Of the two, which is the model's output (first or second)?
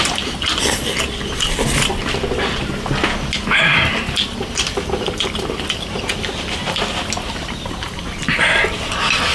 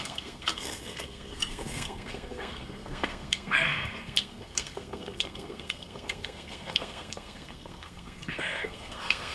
second